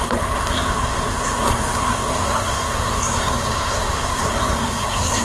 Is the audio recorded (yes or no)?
no